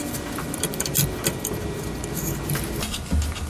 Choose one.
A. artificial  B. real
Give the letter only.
B